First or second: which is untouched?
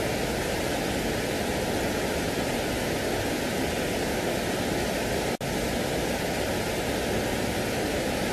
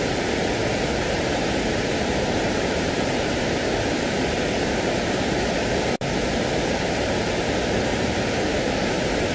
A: first